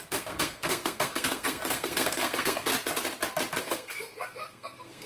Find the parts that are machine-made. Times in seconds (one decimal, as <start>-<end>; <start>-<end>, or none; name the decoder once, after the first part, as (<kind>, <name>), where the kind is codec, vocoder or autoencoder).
0.0-2.7 (codec, SNAC); 3.6-5.1